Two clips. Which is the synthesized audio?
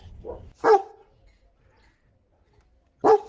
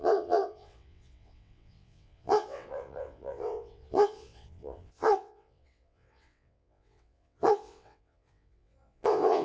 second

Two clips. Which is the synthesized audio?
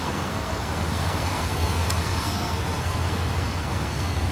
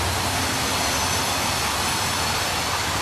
first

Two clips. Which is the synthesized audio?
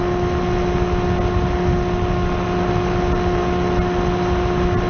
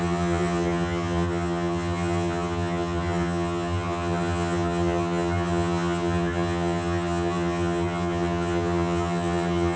second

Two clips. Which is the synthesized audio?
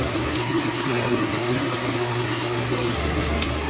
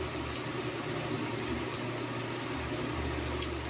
first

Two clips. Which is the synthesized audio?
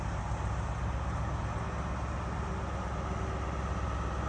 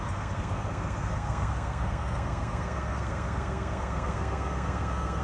second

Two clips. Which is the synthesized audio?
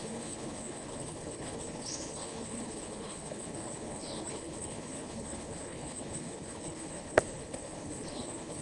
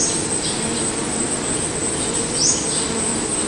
first